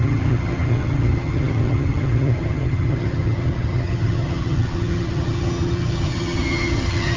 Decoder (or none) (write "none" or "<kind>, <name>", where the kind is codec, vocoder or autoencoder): vocoder, HiFi-GAN